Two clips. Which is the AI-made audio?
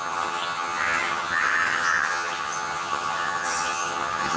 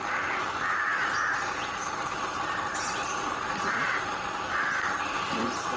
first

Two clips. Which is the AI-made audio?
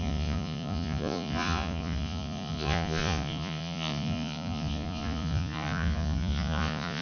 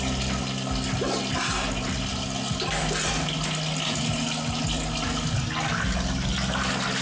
first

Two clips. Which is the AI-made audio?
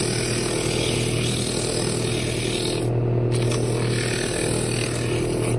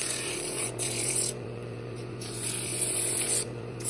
second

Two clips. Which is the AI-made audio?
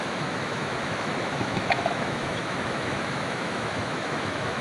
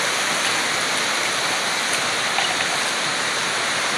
first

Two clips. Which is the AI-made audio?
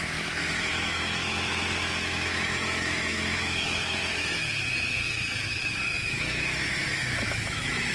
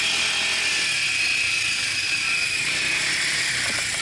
first